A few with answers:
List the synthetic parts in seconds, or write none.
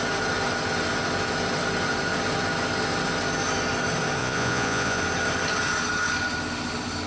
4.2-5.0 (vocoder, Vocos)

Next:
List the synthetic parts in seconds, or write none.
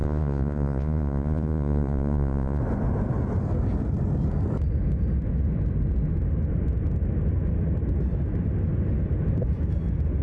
0.0-2.6 (vocoder, Vocos)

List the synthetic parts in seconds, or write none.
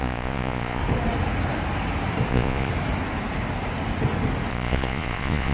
0.0-0.8 (vocoder, Vocos); 2.3-2.7; 4.5-5.5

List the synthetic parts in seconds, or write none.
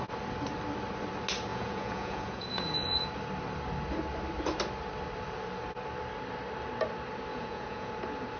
1.5-3.1 (vocoder, Vocos); 7.3-7.9